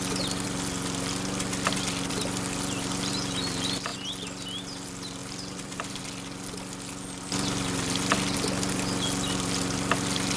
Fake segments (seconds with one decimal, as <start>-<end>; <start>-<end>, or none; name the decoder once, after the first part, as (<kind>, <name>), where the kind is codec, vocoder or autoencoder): 5.2-6.0 (vocoder, BigVGAN v2)